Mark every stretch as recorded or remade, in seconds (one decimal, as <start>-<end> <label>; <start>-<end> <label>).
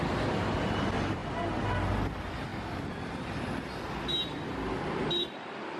0.0-5.8 recorded